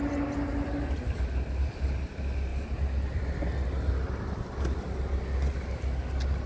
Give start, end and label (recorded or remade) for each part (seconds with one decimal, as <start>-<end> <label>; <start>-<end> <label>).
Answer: 0.0-6.5 recorded